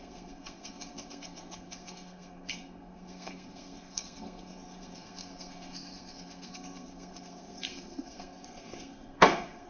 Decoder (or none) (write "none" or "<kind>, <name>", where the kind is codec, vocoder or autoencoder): codec, SNAC